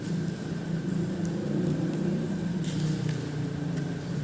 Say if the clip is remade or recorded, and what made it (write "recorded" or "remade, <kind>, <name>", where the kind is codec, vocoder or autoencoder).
recorded